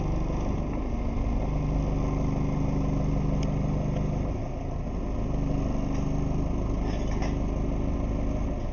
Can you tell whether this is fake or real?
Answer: real